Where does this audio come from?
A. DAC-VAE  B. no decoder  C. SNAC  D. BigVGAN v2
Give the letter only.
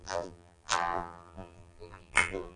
D